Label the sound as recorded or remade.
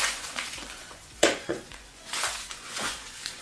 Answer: remade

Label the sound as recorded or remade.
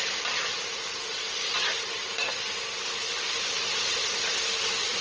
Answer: recorded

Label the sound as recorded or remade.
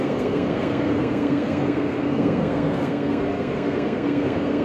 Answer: remade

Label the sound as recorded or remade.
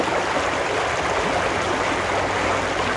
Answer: recorded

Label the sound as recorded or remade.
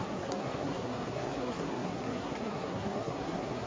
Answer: remade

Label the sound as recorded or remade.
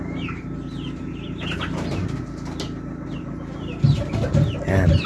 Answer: recorded